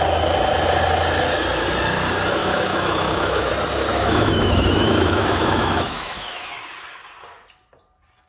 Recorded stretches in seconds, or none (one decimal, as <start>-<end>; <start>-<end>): 0.0-2.4; 3.5-3.9; 6.5-8.3